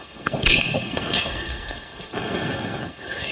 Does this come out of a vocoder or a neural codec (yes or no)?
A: yes